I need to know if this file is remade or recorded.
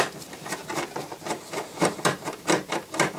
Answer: remade